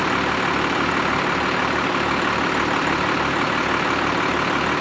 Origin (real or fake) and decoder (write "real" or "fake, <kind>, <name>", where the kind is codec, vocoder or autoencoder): real